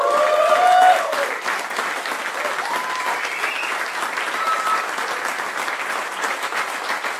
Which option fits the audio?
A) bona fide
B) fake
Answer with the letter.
A